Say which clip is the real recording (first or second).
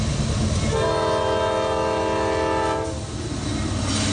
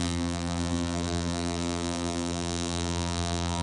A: first